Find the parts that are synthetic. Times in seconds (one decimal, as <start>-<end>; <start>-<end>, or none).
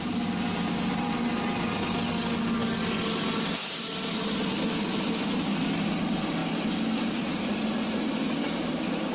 none